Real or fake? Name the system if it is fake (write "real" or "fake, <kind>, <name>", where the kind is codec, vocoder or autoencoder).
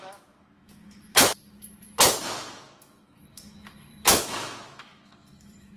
fake, autoencoder, DAC-VAE